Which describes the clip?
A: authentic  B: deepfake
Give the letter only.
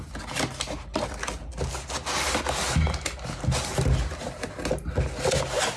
A